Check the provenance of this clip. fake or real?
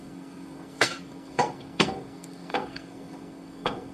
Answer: fake